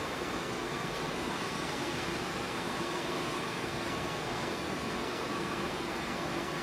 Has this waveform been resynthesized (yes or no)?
yes